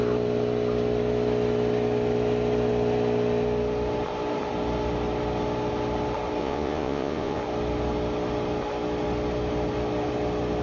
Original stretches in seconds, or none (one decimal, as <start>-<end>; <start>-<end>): 0.0-6.4; 7.4-10.6